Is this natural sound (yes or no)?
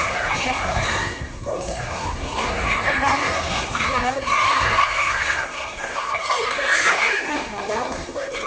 no